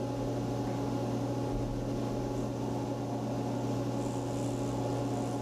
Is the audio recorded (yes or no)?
yes